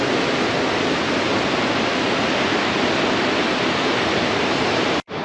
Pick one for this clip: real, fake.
real